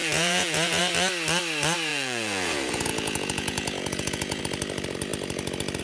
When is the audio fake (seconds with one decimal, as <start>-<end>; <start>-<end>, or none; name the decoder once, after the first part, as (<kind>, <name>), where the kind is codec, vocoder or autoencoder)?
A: 0.0-0.8 (vocoder, Vocos); 1.9-4.4